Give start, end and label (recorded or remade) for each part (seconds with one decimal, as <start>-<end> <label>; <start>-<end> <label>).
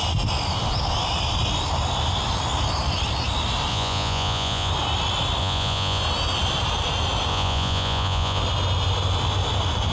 0.0-3.7 recorded; 3.7-4.7 remade; 4.7-5.4 recorded; 5.4-6.0 remade; 6.0-7.3 recorded; 7.3-8.4 remade; 8.4-9.9 recorded